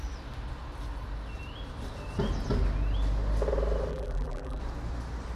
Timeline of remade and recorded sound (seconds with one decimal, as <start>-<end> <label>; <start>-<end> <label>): 0.0-3.9 recorded; 3.9-4.6 remade; 4.6-5.3 recorded